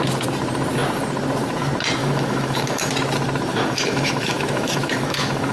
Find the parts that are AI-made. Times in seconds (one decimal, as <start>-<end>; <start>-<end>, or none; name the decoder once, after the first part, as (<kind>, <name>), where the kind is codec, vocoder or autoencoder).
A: 2.0-2.9 (autoencoder, DAC-VAE); 3.5-5.5